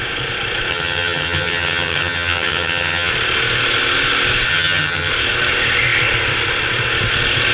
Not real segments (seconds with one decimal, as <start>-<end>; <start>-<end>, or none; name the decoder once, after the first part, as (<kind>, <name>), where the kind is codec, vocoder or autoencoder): 0.7-3.1 (vocoder, HiFi-GAN); 4.5-5.1